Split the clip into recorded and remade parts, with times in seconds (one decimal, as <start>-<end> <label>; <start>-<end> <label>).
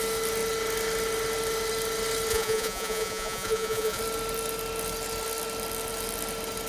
0.0-2.3 recorded; 2.3-4.0 remade; 4.0-6.7 recorded